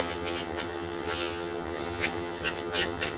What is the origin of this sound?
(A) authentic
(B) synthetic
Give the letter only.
B